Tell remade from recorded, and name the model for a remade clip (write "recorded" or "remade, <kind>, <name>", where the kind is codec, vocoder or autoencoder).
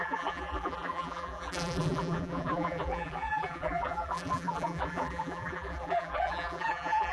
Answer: remade, vocoder, BigVGAN v2